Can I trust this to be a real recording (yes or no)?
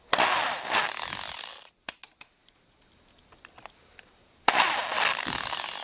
yes